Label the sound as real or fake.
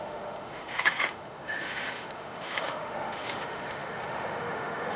fake